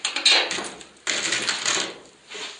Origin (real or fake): real